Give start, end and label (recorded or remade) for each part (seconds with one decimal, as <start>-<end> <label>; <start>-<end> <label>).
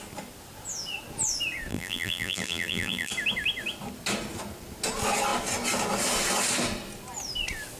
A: 0.0-1.7 recorded; 1.7-3.1 remade; 3.1-7.8 recorded